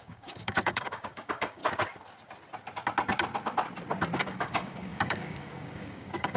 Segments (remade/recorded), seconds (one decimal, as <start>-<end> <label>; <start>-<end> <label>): 0.0-1.6 remade; 1.6-4.2 recorded; 4.2-6.4 remade